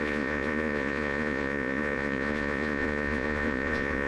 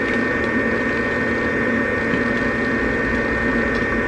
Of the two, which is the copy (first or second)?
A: first